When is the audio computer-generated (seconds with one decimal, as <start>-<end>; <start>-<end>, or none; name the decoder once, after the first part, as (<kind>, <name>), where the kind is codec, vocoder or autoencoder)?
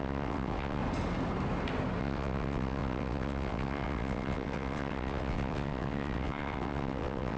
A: 0.0-0.8 (vocoder, WaveNeXt); 2.0-7.4